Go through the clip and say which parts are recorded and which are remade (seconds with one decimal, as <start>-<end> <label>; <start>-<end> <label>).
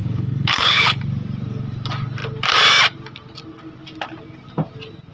0.0-1.0 remade; 1.0-5.1 recorded